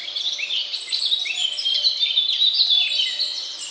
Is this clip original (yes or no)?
yes